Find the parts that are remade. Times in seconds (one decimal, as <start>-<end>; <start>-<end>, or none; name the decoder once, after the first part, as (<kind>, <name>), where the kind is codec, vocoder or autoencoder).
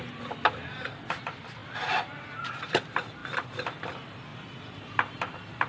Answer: 3.2-3.9 (vocoder, BigVGAN v2)